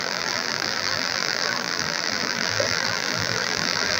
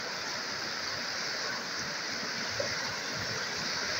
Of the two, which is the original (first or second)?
second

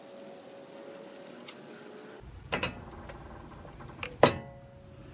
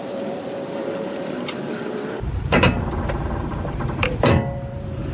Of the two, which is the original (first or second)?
first